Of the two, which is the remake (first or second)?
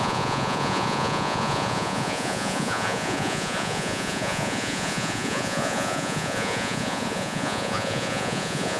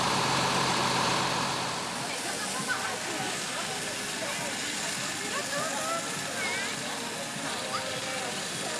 first